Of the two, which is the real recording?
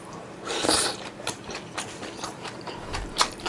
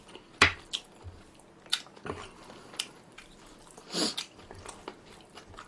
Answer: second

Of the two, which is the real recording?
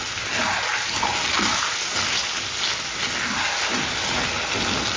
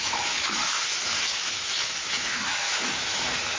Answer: first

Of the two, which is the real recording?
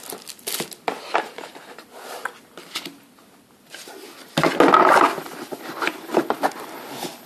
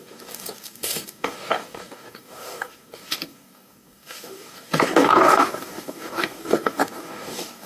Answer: first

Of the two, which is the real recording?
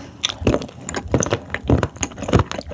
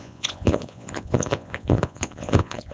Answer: first